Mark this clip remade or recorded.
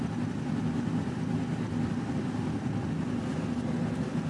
recorded